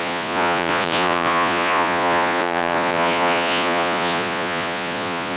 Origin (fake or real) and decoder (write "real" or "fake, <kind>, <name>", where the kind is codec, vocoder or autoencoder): fake, vocoder, Vocos